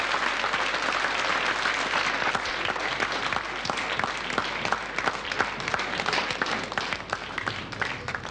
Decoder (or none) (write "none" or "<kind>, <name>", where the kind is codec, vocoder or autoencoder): none